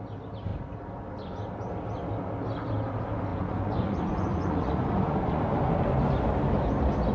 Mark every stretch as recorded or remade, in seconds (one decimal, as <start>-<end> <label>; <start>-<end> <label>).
0.0-3.3 recorded; 3.3-5.4 remade; 5.4-7.1 recorded